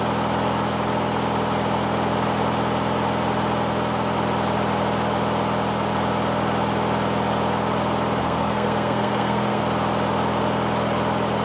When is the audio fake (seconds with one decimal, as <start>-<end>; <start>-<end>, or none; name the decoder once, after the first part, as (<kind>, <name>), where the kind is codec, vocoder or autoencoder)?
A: 8.2-9.6 (codec, SNAC)